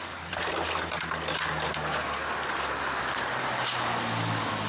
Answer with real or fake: fake